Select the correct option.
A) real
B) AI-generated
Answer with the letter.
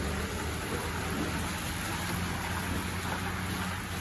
A